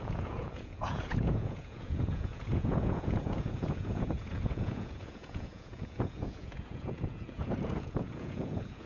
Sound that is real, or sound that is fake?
fake